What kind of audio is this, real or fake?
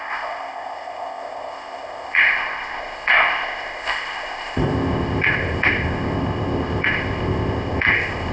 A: fake